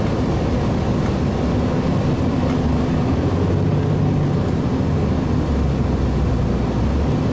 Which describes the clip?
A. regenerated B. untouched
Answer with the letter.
B